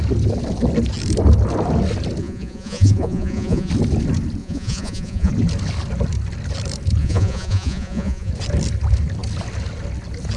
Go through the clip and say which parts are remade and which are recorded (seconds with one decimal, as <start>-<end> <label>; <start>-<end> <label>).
0.0-2.2 recorded; 2.2-3.7 remade; 3.7-4.4 recorded; 4.4-5.3 remade; 5.3-7.0 recorded; 7.0-8.3 remade; 8.3-10.4 recorded